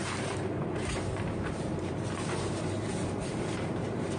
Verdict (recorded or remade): remade